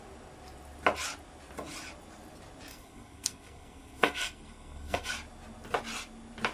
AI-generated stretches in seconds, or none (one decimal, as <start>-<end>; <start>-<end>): 2.7-5.1